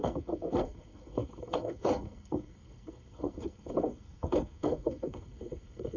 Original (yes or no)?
no